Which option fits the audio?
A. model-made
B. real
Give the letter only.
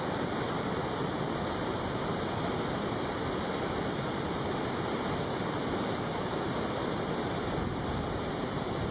B